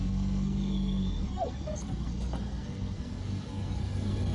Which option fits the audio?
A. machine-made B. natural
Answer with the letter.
A